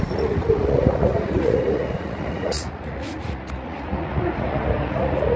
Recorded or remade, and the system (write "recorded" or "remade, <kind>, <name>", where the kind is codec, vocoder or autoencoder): remade, vocoder, Vocos